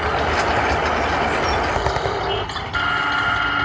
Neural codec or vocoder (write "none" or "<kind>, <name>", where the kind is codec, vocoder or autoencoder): none